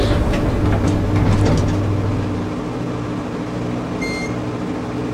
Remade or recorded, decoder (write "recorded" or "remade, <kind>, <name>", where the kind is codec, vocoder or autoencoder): recorded